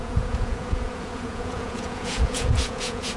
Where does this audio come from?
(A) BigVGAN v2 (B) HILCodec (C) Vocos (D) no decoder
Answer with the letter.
C